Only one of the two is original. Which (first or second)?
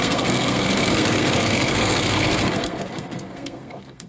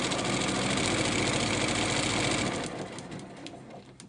second